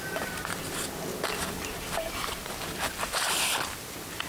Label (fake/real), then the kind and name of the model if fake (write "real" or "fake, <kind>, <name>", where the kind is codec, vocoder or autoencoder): real